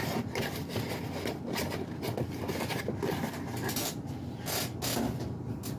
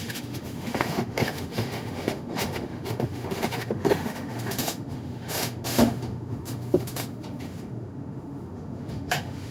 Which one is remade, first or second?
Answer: second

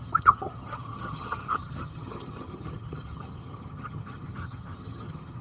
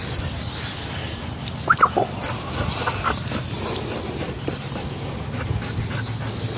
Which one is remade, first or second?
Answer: first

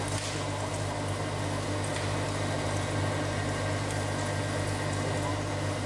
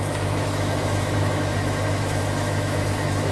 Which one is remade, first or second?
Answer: second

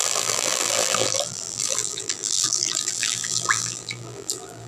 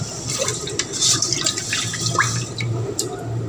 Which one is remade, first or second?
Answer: first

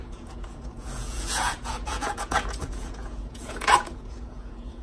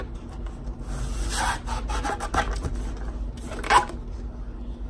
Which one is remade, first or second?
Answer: first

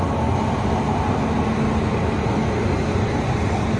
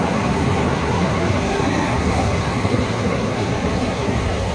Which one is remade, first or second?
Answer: second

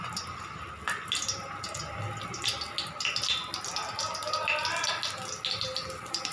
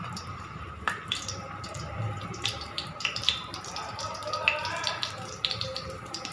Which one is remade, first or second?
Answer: second